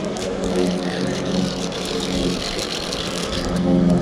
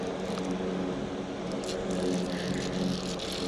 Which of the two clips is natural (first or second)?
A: second